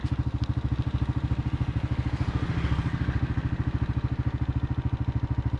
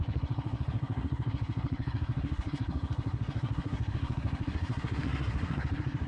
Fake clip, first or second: second